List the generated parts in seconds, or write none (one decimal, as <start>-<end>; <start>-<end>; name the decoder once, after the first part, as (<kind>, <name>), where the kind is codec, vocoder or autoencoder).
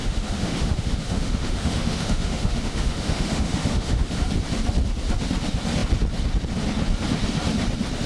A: 0.0-4.2 (autoencoder, DAC-VAE)